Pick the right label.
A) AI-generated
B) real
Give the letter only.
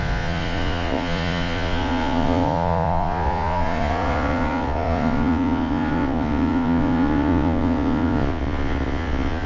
A